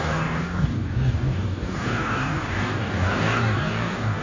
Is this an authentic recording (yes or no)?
no